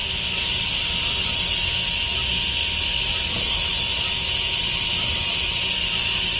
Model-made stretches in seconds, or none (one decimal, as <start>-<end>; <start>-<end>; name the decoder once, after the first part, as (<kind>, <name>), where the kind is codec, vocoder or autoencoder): none